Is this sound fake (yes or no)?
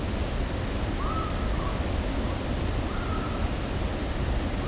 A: no